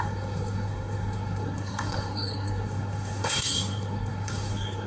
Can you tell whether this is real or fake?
fake